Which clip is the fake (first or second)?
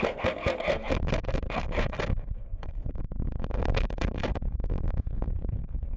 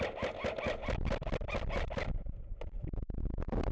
first